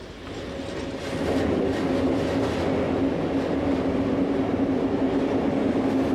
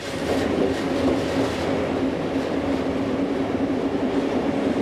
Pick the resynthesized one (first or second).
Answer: second